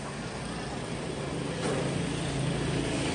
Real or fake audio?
real